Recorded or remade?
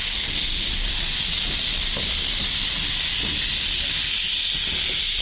recorded